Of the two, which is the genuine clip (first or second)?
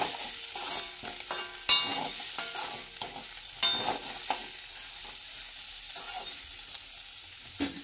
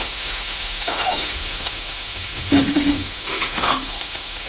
first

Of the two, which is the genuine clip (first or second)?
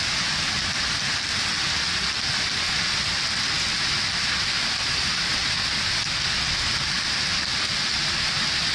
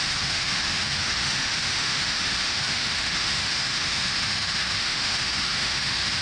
first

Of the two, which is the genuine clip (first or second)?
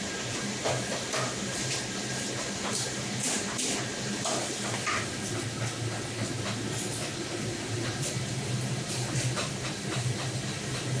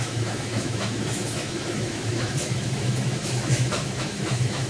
first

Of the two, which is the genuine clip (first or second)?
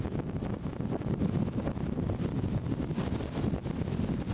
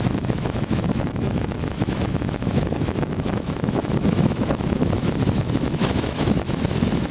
first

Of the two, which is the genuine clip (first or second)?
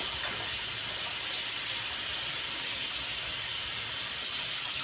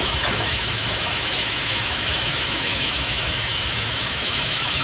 first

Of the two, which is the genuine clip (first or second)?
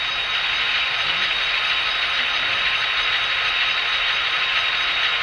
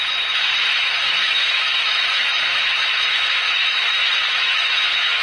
first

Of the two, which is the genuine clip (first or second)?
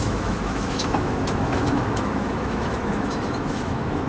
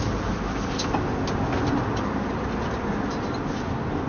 second